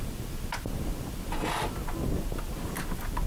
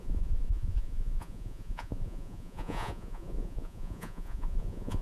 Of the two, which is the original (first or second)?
first